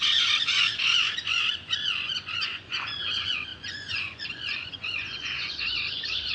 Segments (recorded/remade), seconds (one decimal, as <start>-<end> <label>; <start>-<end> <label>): 0.0-6.3 remade